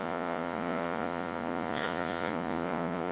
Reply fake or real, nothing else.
fake